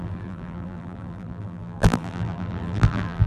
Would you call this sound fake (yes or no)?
yes